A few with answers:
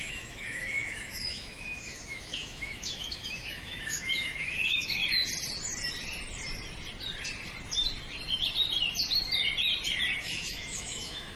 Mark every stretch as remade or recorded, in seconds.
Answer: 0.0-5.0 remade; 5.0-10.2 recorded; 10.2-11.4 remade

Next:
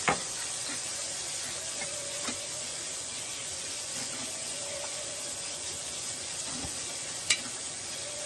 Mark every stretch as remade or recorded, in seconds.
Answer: 0.0-8.3 remade

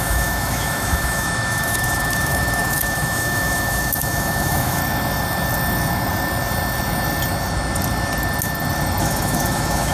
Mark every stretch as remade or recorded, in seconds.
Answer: 0.0-4.8 remade; 4.8-9.0 recorded; 9.0-9.9 remade

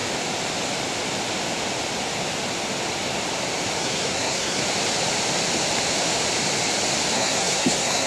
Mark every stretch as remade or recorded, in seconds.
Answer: 0.0-3.8 recorded; 3.8-4.6 remade; 4.6-7.1 recorded; 7.1-8.1 remade

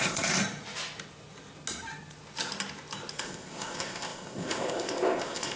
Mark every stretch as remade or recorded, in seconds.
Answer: 0.0-0.4 remade; 0.4-3.2 recorded; 3.2-5.6 remade

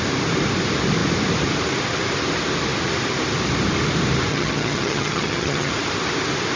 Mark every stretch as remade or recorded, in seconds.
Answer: 0.0-4.3 recorded; 4.3-5.7 remade; 5.7-6.6 recorded